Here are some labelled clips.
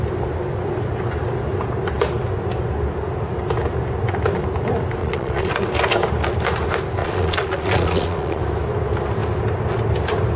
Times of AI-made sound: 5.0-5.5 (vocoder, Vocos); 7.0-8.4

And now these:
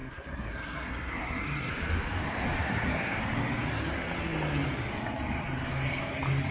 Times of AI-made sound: 0.0-1.7 (codec, SNAC); 2.6-3.2

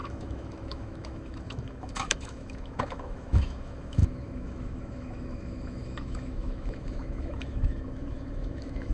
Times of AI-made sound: 0.0-8.9 (autoencoder, DAC-VAE)